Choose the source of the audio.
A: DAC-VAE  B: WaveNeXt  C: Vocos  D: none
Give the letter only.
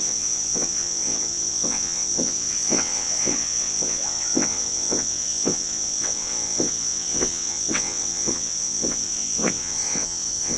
B